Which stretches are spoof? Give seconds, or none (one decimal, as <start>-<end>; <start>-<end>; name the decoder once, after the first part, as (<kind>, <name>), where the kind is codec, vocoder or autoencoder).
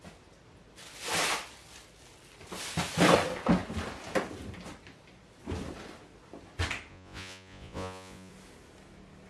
6.9-8.3 (vocoder, Vocos)